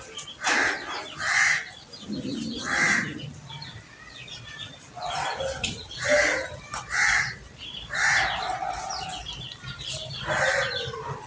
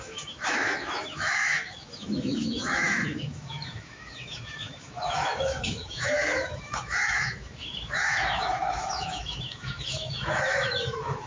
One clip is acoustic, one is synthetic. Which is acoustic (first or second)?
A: first